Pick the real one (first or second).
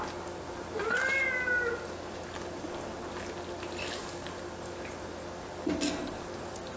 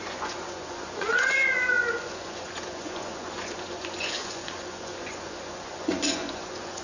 first